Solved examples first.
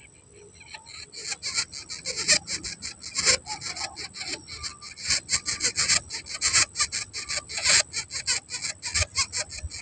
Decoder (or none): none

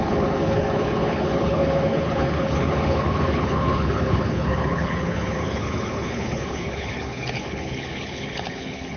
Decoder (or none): codec, HILCodec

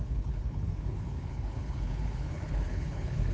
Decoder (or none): codec, HILCodec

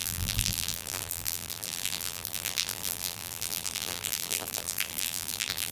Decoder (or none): vocoder, BigVGAN v2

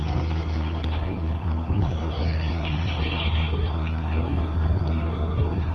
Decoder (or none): codec, SNAC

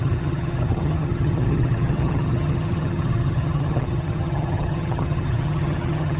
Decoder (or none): vocoder, HiFi-GAN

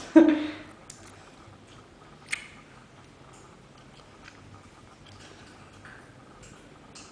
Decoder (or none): none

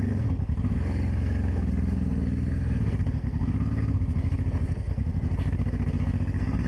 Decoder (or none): codec, SNAC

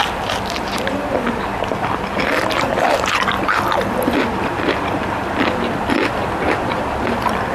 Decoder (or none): vocoder, BigVGAN v2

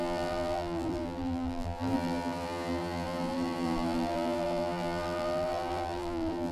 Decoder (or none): vocoder, BigVGAN v2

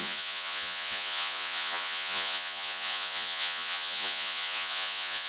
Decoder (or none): vocoder, Vocos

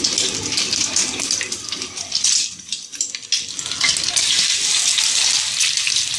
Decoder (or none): none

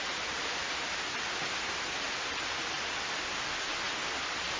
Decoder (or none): none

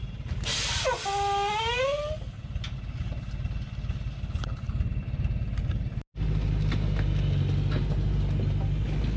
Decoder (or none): none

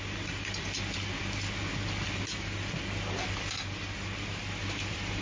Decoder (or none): none